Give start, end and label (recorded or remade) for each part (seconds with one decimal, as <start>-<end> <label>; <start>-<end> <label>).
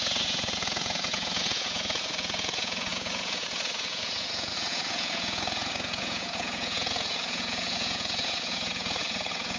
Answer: 0.0-9.6 remade